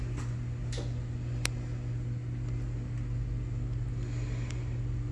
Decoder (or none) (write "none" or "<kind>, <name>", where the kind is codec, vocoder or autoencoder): none